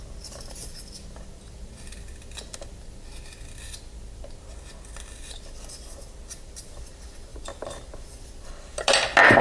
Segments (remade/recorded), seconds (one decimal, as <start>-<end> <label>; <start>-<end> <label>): 0.0-9.4 recorded